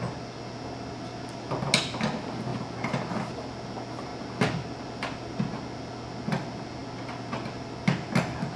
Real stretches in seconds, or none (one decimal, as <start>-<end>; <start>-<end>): 0.0-8.6